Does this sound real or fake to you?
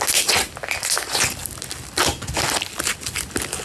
real